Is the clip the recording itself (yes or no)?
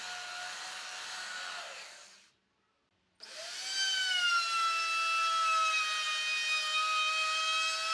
yes